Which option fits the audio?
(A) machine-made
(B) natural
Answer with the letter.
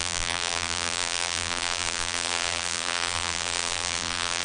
A